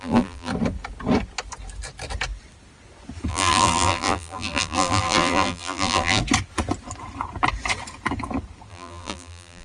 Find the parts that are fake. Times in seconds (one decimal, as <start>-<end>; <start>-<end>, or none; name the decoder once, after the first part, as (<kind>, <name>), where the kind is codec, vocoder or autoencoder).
0.0-0.5 (vocoder, BigVGAN v2); 3.3-6.2; 8.7-9.6